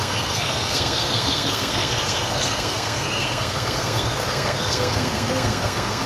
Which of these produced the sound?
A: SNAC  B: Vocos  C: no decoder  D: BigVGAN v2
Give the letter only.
A